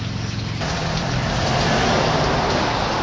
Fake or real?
real